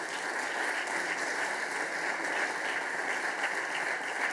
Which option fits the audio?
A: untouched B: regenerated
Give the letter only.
A